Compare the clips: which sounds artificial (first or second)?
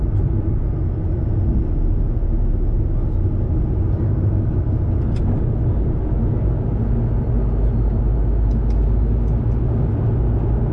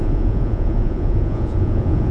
second